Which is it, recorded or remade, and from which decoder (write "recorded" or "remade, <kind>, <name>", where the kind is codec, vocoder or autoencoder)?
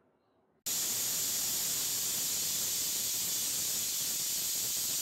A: recorded